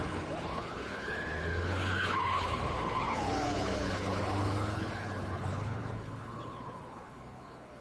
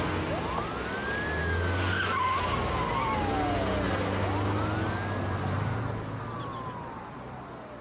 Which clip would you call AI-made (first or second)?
first